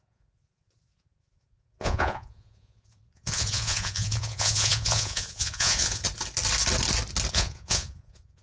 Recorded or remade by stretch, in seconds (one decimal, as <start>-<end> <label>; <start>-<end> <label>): 0.0-6.0 remade; 6.0-7.3 recorded; 7.3-8.4 remade